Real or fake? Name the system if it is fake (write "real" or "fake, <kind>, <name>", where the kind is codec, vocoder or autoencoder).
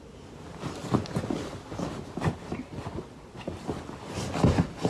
real